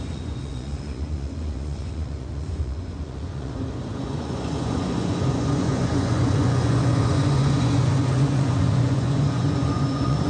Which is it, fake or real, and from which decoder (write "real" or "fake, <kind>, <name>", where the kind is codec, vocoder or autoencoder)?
fake, vocoder, Vocos